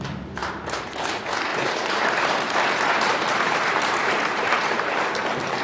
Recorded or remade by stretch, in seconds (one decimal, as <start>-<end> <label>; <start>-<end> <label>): 0.0-0.4 recorded; 0.4-1.0 remade; 1.0-1.5 recorded; 1.5-4.9 remade; 4.9-5.6 recorded

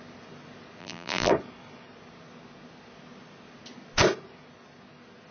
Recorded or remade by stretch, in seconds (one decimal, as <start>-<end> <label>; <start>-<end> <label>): 0.0-0.8 recorded; 0.8-1.3 remade; 1.3-5.3 recorded

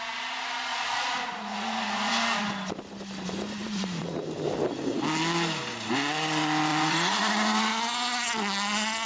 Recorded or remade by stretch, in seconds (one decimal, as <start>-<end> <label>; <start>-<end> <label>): 0.0-0.7 recorded; 0.7-2.1 remade; 2.1-3.6 recorded; 3.6-4.2 remade; 4.2-6.7 recorded; 6.7-7.7 remade; 7.7-9.1 recorded

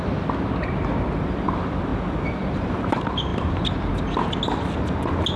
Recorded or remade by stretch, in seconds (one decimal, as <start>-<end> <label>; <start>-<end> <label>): 0.0-5.4 recorded

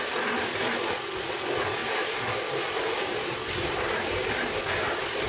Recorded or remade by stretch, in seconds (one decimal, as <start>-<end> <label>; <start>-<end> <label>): 0.0-1.8 recorded; 1.8-4.1 remade; 4.1-5.3 recorded

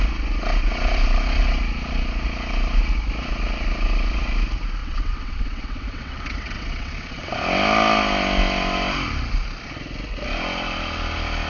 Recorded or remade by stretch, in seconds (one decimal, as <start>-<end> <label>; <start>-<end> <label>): 0.0-4.8 recorded; 4.8-7.3 remade; 7.3-11.5 recorded